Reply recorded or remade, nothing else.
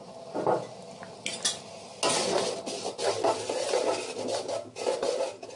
recorded